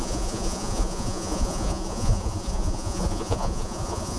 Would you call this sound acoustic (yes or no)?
no